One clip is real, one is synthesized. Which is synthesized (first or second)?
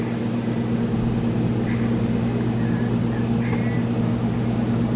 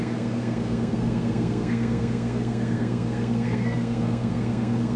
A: second